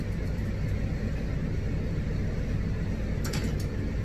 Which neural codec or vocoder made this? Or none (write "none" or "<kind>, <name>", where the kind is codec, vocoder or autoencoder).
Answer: none